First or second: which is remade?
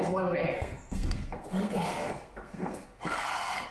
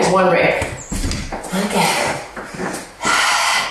first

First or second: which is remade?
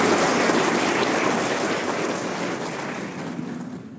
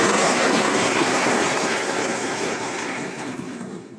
second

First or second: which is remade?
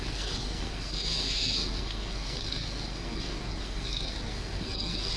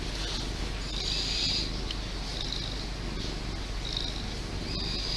first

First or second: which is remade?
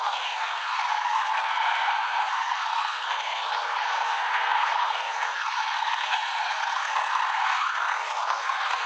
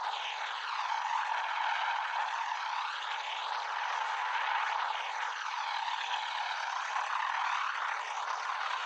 first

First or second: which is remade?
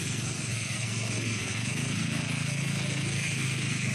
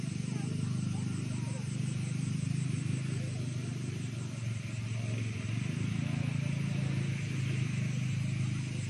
first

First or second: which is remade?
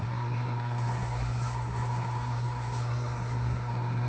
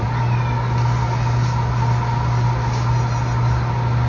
first